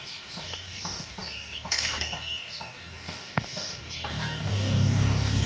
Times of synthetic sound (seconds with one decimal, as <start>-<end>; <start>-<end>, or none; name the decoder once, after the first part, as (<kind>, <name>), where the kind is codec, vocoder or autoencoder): 0.0-5.5 (codec, DAC)